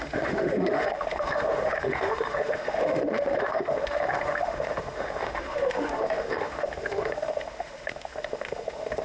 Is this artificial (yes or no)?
yes